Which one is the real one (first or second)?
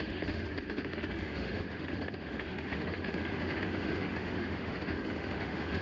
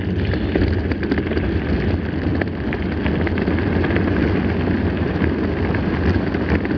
second